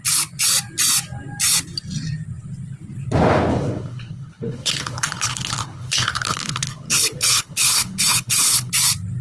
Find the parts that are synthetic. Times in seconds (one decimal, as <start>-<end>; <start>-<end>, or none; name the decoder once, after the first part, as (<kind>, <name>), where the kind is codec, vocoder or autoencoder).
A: 3.5-8.7 (codec, HILCodec)